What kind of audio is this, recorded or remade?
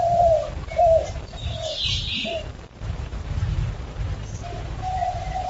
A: remade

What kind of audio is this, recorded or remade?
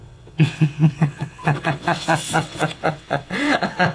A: remade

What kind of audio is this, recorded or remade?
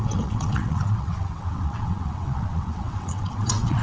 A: remade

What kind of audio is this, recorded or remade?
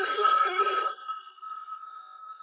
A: remade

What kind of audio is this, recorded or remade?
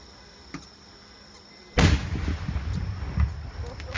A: recorded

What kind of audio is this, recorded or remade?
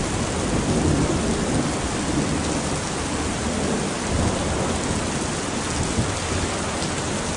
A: recorded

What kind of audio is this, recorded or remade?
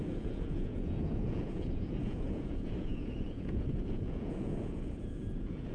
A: remade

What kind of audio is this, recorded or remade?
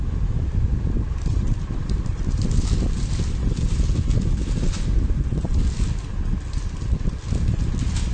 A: recorded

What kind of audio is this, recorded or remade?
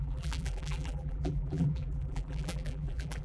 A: remade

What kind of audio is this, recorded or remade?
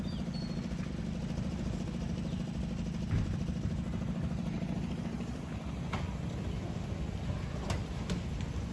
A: recorded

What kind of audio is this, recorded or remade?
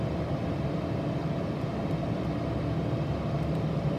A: recorded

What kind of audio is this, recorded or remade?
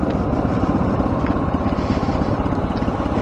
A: recorded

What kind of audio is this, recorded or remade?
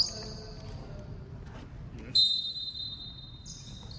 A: recorded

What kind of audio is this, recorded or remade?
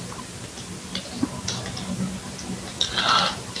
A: recorded